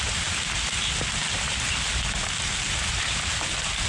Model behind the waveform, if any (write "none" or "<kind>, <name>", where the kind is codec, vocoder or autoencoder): none